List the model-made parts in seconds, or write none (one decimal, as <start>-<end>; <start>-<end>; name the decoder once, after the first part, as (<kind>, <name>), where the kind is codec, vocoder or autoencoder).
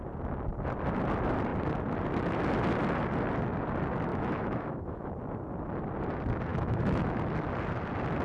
4.1-5.1 (autoencoder, DAC-VAE); 6.5-7.2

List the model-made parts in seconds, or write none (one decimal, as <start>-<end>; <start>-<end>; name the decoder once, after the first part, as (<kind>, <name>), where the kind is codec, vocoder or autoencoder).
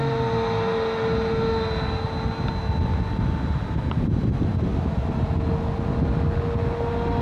none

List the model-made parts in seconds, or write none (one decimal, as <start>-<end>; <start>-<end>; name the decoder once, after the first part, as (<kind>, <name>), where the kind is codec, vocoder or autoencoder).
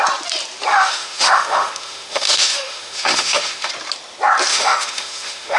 0.7-3.7 (autoencoder, DAC-VAE); 4.5-5.6